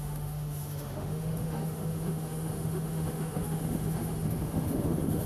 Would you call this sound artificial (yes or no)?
yes